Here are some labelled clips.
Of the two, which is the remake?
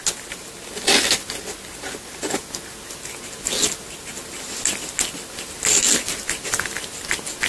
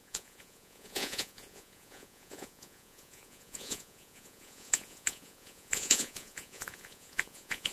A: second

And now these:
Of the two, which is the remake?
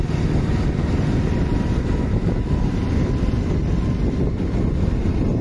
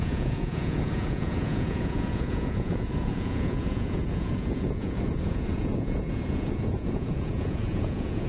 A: second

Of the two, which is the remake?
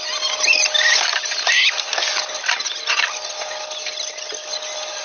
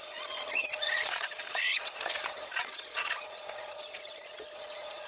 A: second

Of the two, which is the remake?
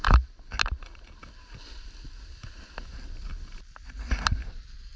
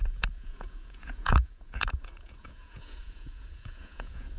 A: second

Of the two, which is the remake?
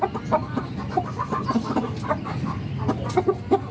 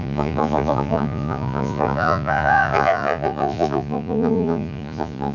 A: second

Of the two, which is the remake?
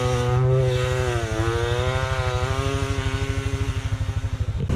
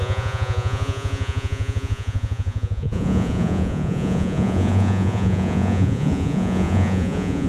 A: second